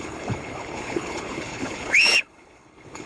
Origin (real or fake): fake